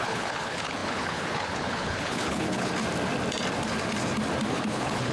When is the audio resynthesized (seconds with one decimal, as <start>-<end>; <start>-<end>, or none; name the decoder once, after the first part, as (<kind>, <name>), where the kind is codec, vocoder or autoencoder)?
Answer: 0.0-2.7 (codec, HILCodec); 4.5-5.1